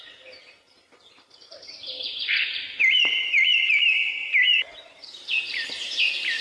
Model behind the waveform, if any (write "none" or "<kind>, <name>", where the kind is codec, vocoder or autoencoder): vocoder, BigVGAN v2